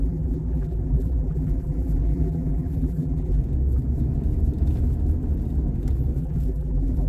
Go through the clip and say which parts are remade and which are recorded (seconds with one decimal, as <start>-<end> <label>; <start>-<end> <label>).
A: 0.0-3.4 remade; 3.4-6.2 recorded; 6.2-7.1 remade